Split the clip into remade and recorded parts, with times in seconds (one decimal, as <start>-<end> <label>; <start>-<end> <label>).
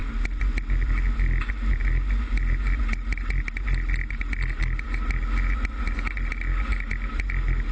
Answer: 0.0-7.7 recorded